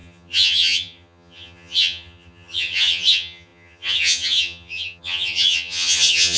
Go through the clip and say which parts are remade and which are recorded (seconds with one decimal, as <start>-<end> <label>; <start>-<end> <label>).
0.0-6.4 remade